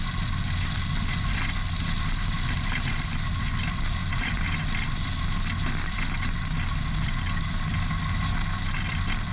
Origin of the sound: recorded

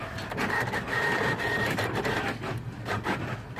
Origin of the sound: recorded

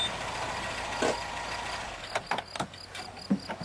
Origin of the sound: recorded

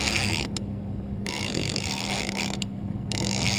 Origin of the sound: remade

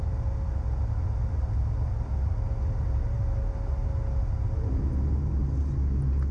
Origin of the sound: recorded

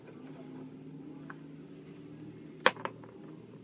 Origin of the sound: recorded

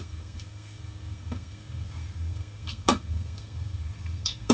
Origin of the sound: remade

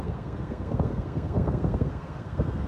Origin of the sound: remade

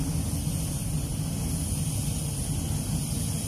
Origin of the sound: recorded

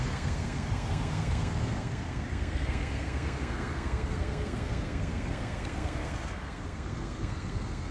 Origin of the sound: remade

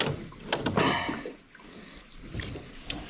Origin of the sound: recorded